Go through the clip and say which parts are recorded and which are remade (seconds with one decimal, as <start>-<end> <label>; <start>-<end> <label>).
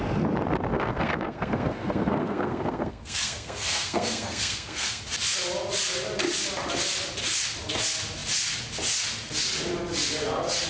0.0-0.7 recorded; 0.7-5.0 remade; 5.0-10.7 recorded